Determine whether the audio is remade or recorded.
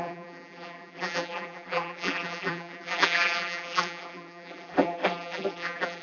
remade